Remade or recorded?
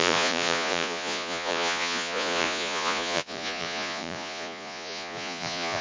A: remade